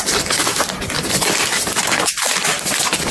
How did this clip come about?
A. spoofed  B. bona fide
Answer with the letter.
B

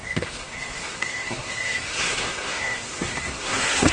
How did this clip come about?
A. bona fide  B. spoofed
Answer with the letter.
B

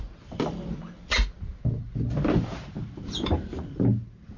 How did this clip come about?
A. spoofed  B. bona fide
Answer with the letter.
B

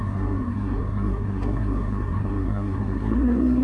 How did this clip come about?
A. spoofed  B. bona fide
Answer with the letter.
A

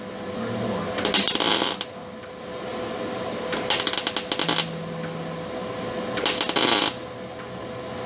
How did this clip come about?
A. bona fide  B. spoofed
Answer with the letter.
A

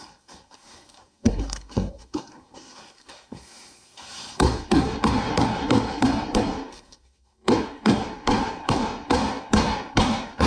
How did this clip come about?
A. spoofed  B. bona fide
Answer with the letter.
A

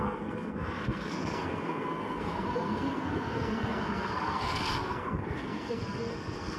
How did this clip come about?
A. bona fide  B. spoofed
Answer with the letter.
B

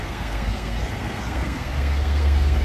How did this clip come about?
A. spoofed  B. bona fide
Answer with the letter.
A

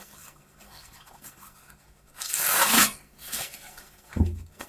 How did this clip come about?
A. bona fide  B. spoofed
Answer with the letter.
B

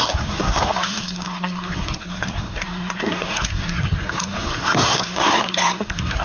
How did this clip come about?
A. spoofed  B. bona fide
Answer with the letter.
A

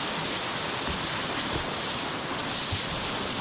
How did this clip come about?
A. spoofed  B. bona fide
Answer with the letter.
B